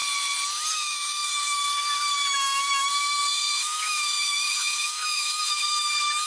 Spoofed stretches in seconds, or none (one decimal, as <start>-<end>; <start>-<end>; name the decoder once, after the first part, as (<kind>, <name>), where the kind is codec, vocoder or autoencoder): 0.7-6.3 (autoencoder, DAC-VAE)